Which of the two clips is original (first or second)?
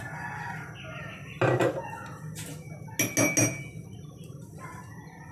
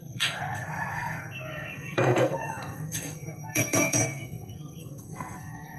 first